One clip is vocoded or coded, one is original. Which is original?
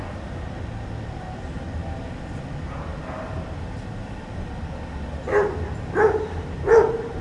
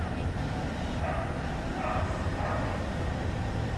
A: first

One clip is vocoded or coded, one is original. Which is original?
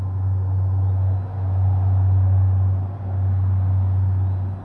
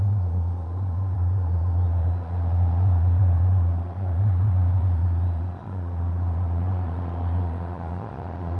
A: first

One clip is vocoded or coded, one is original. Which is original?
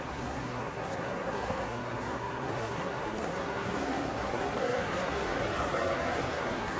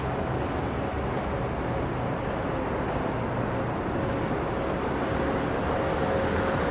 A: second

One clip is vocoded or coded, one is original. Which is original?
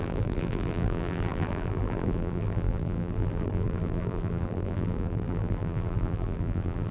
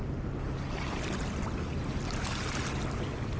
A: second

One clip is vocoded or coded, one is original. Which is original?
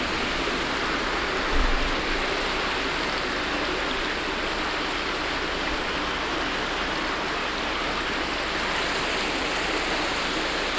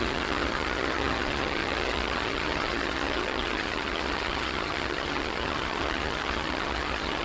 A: first